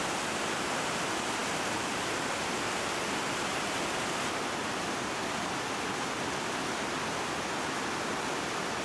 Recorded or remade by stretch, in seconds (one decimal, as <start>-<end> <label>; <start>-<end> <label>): 0.0-8.8 recorded

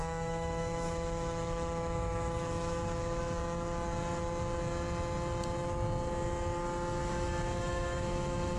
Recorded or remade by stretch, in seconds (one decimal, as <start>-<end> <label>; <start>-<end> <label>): 0.0-3.4 remade; 3.4-7.0 recorded; 7.0-8.6 remade

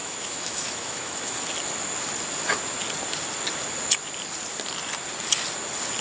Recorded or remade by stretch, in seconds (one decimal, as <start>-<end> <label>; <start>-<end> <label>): 0.0-1.3 remade; 1.3-6.0 recorded